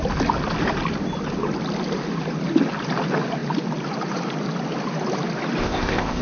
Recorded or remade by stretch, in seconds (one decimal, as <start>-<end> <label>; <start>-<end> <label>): 0.0-5.6 recorded; 5.6-6.2 remade